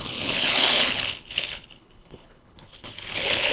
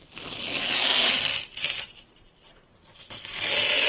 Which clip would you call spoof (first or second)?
first